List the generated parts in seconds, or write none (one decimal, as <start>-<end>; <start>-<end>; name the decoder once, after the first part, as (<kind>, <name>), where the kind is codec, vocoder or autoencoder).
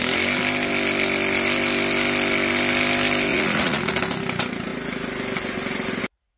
3.3-4.0 (vocoder, Vocos)